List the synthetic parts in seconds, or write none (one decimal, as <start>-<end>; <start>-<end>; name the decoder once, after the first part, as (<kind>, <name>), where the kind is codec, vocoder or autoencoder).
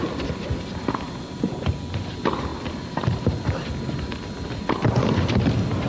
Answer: none